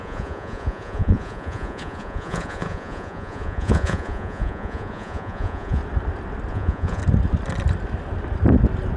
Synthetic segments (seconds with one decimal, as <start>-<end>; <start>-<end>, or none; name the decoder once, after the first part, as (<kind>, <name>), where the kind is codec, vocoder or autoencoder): 0.0-5.8 (vocoder, Vocos); 6.5-7.0